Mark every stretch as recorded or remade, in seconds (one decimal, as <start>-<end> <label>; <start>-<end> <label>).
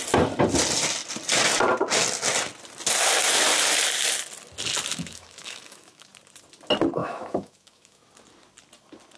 0.0-4.9 recorded; 4.9-6.1 remade; 6.1-7.0 recorded; 7.0-8.1 remade; 8.1-9.2 recorded